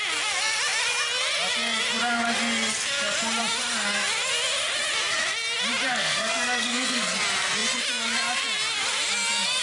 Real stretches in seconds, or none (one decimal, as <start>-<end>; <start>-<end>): 0.0-5.9; 7.1-9.6